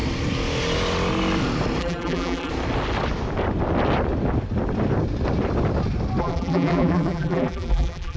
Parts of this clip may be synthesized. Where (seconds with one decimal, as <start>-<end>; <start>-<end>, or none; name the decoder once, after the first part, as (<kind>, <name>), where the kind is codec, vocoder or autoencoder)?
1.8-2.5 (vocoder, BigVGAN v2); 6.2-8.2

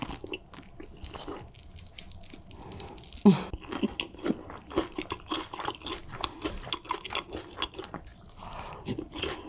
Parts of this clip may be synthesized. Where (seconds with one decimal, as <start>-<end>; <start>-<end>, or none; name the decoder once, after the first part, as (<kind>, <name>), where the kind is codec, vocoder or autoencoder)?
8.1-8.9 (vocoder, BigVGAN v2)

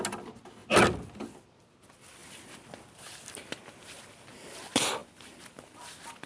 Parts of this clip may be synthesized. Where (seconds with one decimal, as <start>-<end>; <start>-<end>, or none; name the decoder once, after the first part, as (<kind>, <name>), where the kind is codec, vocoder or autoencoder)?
2.2-3.3 (vocoder, BigVGAN v2); 5.0-5.6

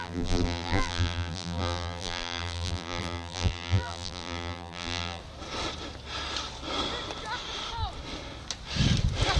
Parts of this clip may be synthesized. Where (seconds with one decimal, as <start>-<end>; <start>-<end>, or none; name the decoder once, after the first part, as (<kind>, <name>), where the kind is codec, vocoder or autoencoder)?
0.0-5.2 (vocoder, BigVGAN v2)